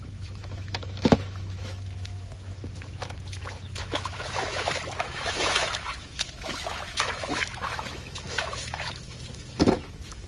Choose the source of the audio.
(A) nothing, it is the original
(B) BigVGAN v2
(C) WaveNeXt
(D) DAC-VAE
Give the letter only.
D